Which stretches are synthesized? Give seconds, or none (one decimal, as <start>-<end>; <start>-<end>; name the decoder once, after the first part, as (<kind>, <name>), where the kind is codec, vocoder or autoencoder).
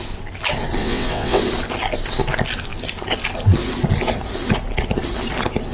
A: 0.8-1.4 (vocoder, WaveNeXt)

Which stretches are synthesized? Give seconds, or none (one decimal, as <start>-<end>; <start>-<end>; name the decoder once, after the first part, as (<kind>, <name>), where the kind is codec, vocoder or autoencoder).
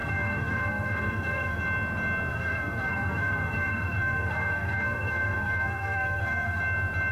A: 0.0-1.6 (codec, SNAC); 2.3-6.6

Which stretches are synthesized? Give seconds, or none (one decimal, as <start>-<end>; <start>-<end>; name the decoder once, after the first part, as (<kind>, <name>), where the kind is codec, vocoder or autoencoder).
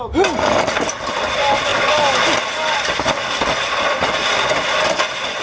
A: none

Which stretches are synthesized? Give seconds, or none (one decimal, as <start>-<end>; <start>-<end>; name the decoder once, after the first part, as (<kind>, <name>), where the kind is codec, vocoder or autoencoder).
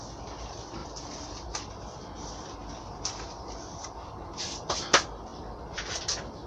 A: 0.8-1.6 (vocoder, BigVGAN v2); 5.3-6.0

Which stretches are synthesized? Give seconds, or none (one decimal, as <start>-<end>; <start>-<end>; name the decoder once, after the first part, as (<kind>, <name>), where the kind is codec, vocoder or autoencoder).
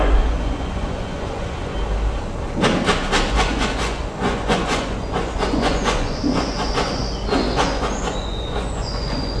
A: 0.0-1.7 (vocoder, Vocos); 3.3-9.4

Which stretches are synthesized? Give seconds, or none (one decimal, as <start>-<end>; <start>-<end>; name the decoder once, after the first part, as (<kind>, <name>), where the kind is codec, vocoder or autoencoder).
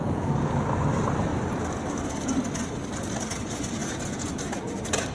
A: 0.0-0.6 (vocoder, Vocos); 3.8-4.3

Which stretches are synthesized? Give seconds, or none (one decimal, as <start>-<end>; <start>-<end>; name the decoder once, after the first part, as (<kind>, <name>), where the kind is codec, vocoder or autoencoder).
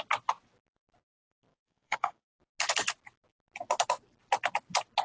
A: 1.5-2.2 (codec, DAC)